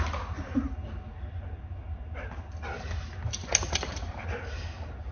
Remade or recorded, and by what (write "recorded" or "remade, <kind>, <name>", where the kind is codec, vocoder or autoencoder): recorded